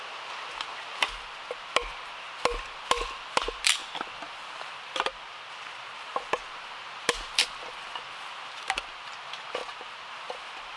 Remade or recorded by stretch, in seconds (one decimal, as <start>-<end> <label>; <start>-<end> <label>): 0.0-10.8 recorded